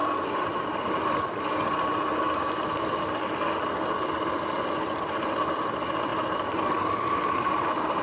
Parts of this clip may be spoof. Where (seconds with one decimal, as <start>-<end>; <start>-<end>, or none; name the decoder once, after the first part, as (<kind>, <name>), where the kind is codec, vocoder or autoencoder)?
none